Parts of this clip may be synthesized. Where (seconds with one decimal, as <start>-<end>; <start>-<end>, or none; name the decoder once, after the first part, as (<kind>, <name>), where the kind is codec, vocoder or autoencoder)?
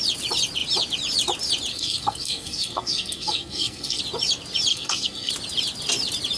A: 1.7-4.0 (codec, SNAC); 4.7-5.3